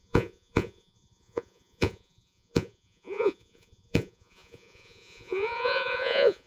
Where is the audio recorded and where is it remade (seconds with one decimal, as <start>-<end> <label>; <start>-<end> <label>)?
0.0-6.5 remade